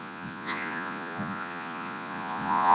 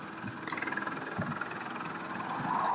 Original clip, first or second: second